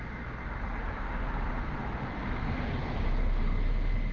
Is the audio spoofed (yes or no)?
no